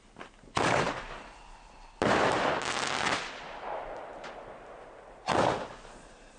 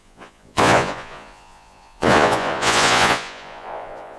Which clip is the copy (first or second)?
second